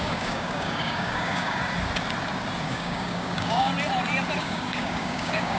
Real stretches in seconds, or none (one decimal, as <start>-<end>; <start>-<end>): 1.6-2.6; 3.7-4.4